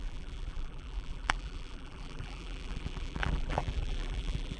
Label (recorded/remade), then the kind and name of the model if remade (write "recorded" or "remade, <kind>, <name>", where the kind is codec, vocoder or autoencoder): remade, vocoder, BigVGAN v2